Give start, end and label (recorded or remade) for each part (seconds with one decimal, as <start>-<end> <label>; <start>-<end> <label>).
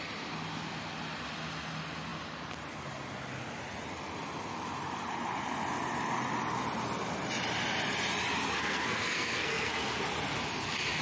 0.0-8.5 recorded; 8.5-10.0 remade; 10.0-11.0 recorded